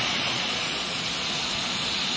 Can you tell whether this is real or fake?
fake